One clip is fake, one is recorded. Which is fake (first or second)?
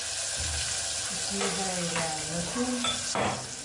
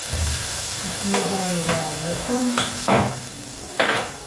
second